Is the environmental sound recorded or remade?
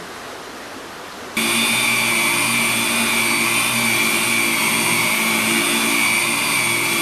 recorded